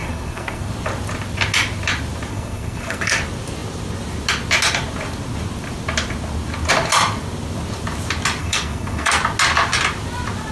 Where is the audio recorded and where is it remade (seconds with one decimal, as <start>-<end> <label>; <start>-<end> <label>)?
0.0-0.7 remade; 0.7-2.3 recorded; 2.3-3.2 remade; 3.2-8.4 recorded; 8.4-9.2 remade; 9.2-10.5 recorded